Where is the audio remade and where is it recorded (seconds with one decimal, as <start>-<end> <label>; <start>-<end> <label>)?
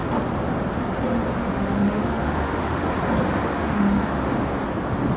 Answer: 0.0-1.4 recorded; 1.4-2.9 remade; 2.9-3.4 recorded; 3.4-4.2 remade; 4.2-5.2 recorded